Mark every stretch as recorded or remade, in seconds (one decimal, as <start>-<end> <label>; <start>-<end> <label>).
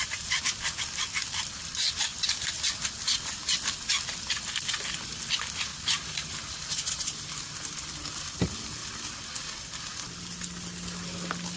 0.0-5.7 recorded; 5.7-6.9 remade; 6.9-11.6 recorded